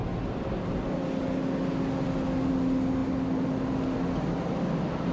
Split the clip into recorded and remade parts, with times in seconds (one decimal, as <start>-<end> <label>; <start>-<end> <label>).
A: 0.0-5.1 recorded